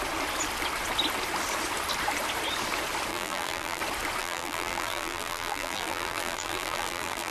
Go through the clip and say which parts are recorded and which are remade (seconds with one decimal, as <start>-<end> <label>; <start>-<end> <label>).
0.0-3.1 recorded; 3.1-3.8 remade; 3.8-4.2 recorded; 4.2-7.3 remade